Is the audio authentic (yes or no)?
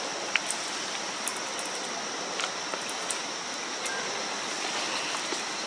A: yes